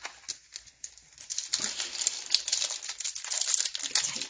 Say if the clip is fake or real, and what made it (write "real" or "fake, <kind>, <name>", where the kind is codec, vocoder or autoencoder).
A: real